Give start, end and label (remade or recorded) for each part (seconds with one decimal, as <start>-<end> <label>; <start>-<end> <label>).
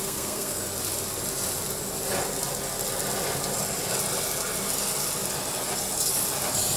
0.0-0.6 remade; 0.6-6.8 recorded